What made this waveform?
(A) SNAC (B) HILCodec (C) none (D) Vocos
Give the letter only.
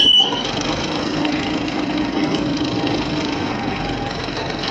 A